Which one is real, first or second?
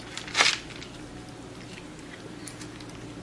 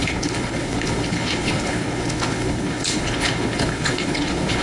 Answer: first